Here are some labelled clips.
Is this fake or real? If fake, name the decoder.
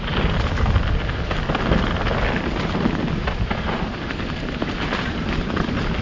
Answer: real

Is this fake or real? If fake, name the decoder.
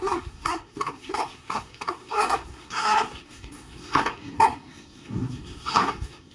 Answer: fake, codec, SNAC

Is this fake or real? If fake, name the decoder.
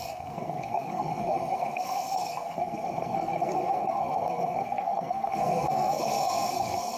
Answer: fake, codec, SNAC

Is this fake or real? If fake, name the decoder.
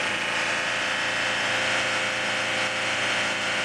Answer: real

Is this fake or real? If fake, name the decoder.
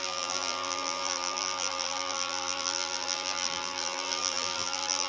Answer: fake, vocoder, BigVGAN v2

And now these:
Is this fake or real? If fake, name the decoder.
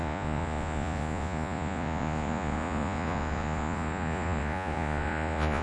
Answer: fake, vocoder, Vocos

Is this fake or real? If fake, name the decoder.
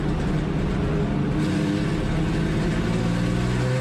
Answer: real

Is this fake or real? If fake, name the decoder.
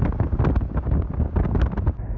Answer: real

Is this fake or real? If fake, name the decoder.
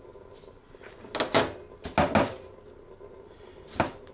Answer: real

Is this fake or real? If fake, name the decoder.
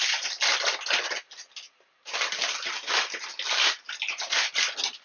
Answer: real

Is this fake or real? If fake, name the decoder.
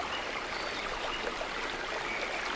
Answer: real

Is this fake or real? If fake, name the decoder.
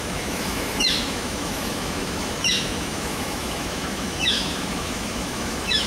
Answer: fake, autoencoder, DAC-VAE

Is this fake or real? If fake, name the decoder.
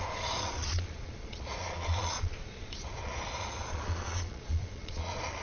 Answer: fake, vocoder, Vocos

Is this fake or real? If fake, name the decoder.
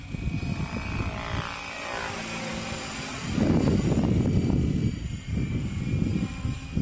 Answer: fake, vocoder, BigVGAN v2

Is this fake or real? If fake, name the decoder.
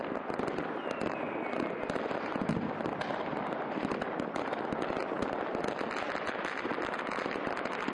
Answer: real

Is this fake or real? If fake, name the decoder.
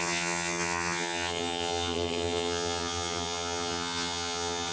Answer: fake, vocoder, HiFi-GAN